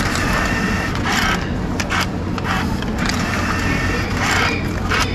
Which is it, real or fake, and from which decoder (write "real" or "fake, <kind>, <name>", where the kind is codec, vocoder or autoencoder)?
real